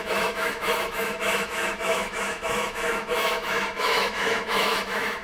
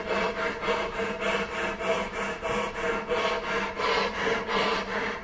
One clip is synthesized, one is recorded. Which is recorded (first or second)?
second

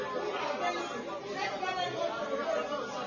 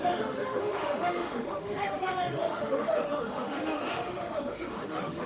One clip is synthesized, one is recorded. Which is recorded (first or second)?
first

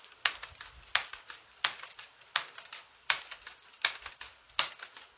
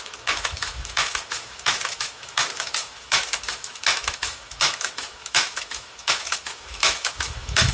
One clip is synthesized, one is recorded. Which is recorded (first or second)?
first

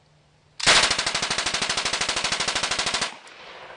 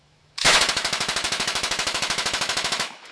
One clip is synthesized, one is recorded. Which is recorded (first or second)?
first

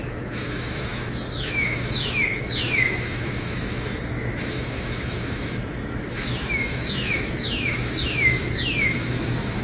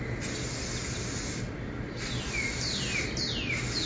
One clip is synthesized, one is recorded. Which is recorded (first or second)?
second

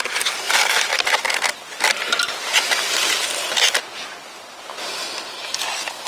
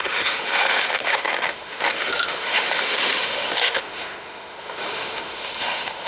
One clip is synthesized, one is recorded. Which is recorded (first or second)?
first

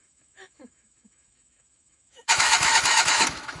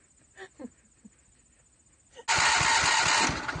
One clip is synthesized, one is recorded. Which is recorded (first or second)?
second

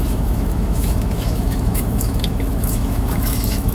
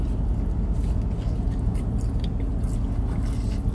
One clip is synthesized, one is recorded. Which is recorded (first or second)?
second